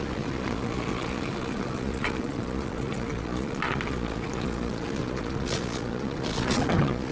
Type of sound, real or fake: fake